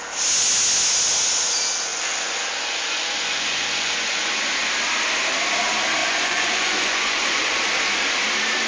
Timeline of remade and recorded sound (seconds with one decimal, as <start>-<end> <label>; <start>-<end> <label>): 0.0-1.9 recorded; 1.9-4.3 remade; 4.3-6.0 recorded; 6.0-7.6 remade; 7.6-8.7 recorded